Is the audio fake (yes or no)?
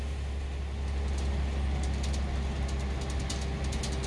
no